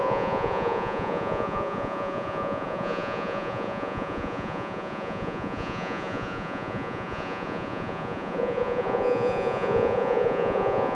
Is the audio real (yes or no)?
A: no